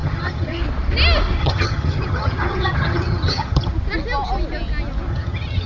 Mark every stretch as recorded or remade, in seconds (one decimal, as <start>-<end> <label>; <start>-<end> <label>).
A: 0.0-0.6 remade; 0.6-1.4 recorded; 1.4-3.7 remade; 3.7-5.1 recorded; 5.1-5.7 remade